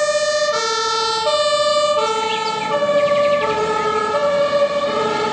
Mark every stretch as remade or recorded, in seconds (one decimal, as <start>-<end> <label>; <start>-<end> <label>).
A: 0.0-5.3 recorded